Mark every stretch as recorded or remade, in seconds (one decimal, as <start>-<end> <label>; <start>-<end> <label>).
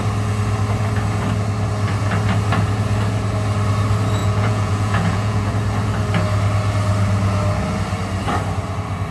0.0-4.2 recorded; 4.2-5.5 remade; 5.5-9.1 recorded